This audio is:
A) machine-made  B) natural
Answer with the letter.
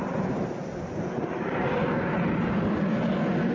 B